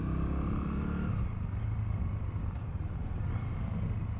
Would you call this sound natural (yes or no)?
yes